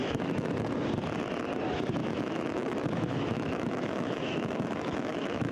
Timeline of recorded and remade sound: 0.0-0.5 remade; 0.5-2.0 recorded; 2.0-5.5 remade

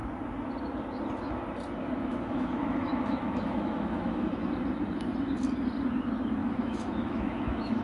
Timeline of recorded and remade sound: 0.0-2.1 recorded; 2.1-4.3 remade; 4.3-6.4 recorded; 6.4-7.8 remade

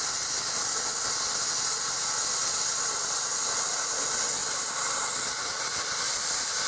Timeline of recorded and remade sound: 0.0-6.7 recorded

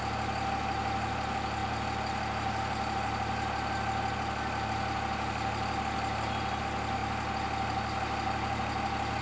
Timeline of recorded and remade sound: 0.0-9.2 recorded

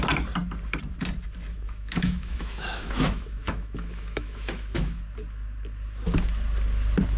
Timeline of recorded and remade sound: 0.0-1.5 recorded; 1.5-5.0 remade; 5.0-7.2 recorded

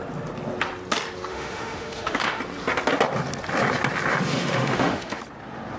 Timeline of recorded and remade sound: 0.0-1.3 recorded; 1.3-2.4 remade; 2.4-4.1 recorded; 4.1-5.2 remade; 5.2-5.8 recorded